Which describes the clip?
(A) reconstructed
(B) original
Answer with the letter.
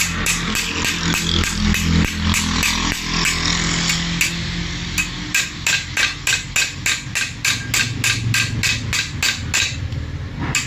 B